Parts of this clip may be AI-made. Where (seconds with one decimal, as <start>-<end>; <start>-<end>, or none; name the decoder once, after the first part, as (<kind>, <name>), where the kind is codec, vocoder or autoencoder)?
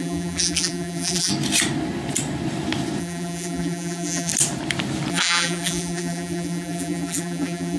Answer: 0.0-1.3 (vocoder, BigVGAN v2); 3.0-4.3; 5.1-7.8